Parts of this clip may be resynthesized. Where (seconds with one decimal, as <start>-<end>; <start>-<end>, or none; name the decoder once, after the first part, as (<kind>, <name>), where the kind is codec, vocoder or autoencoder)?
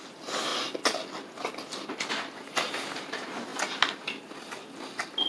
none